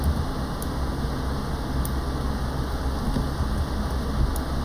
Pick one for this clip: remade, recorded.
recorded